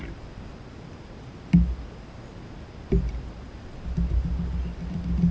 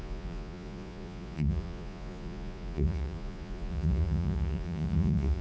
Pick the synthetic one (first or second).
second